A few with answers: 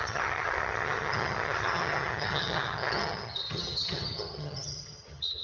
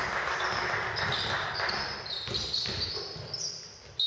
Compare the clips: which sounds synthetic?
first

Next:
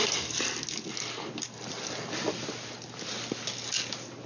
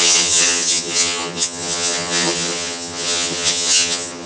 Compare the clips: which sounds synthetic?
second